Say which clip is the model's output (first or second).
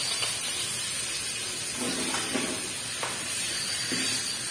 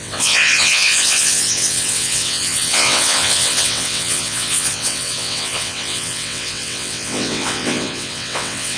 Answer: second